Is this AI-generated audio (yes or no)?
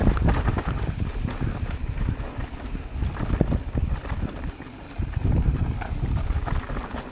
no